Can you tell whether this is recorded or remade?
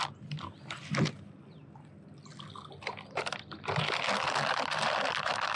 recorded